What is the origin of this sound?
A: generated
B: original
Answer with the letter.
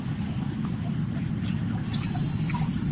B